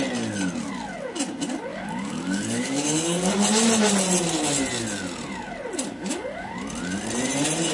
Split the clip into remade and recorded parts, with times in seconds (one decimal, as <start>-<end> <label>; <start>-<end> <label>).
0.0-1.7 recorded; 1.7-3.3 remade; 3.3-5.9 recorded; 5.9-6.5 remade; 6.5-7.7 recorded